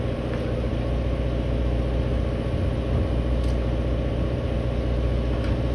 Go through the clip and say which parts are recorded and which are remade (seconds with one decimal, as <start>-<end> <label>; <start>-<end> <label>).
0.0-5.7 recorded